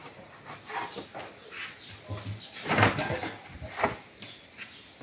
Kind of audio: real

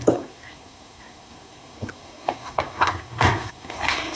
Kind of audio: fake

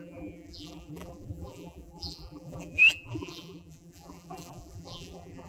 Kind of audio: fake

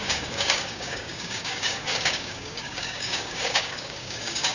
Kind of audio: fake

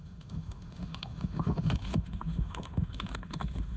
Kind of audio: fake